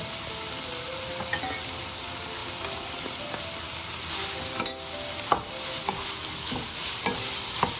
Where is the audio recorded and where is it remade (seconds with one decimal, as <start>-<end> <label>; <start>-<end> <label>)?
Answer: 0.0-7.8 recorded